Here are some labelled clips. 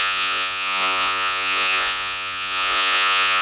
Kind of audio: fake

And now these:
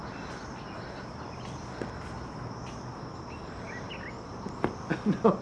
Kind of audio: real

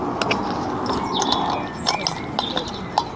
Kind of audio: real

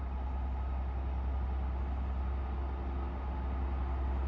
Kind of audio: real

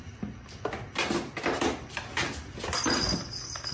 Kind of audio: real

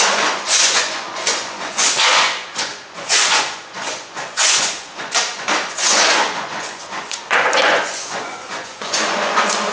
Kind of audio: fake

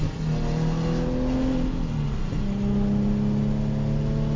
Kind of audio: real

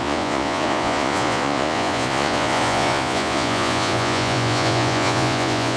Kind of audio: fake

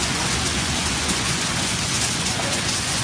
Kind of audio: fake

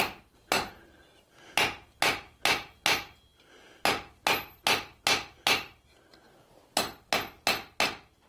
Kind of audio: real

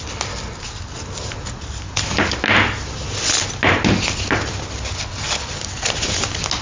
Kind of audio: real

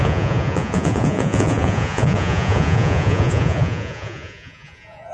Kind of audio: fake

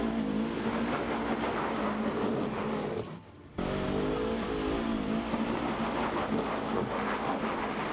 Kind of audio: real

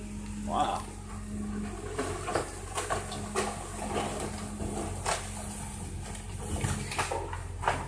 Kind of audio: real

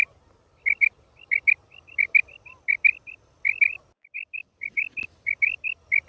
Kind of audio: real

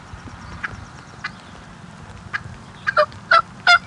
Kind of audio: real